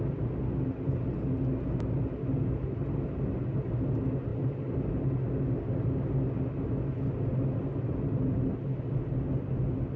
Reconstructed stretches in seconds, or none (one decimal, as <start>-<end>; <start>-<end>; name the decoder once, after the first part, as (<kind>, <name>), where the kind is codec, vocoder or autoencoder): none